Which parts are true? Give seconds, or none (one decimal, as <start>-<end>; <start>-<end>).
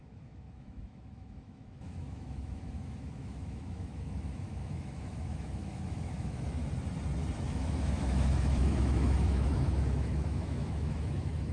6.6-7.5